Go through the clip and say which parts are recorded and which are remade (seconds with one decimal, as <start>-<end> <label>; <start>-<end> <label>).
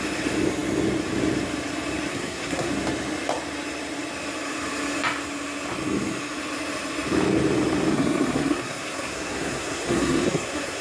0.0-2.1 recorded; 2.1-2.7 remade; 2.7-7.9 recorded; 7.9-10.8 remade